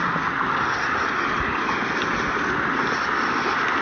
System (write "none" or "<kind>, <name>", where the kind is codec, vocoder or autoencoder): none